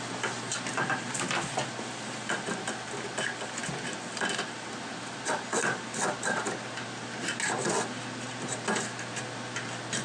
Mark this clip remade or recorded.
recorded